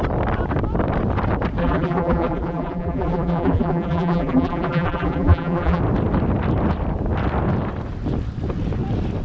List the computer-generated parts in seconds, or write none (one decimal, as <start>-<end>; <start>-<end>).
1.6-5.8